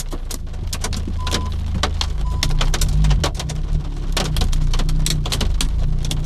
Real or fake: real